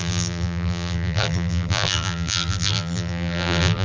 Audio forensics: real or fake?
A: fake